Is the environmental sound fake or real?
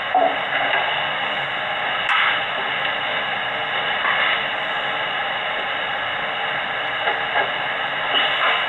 real